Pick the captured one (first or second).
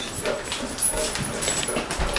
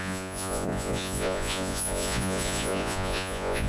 first